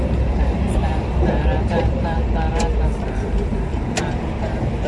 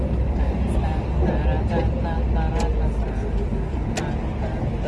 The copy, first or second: first